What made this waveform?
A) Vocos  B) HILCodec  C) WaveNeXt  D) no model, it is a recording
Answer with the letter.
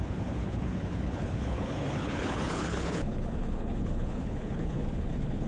B